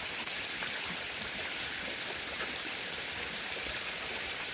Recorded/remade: remade